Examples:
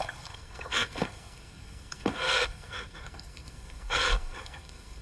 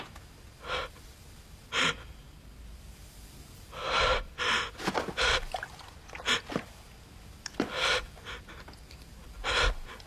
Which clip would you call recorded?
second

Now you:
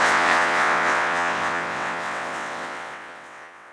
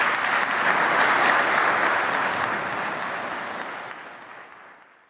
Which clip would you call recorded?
second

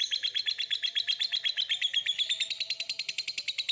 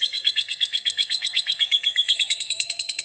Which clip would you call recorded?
first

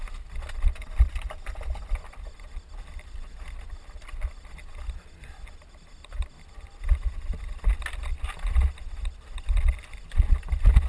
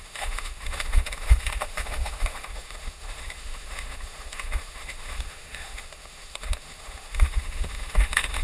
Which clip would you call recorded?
first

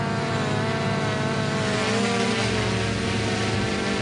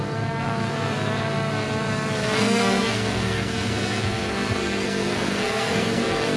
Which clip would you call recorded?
first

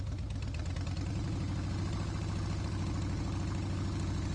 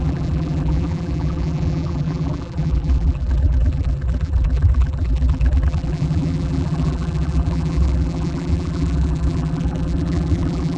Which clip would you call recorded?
first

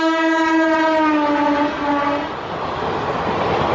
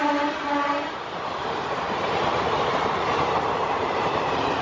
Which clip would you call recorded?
first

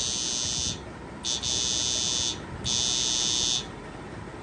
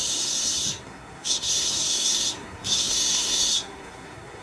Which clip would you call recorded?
first